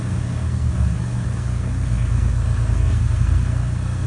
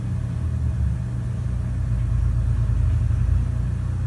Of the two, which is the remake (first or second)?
first